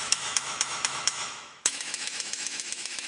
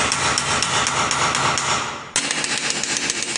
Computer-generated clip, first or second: first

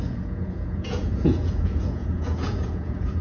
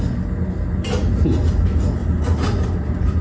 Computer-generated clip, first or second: first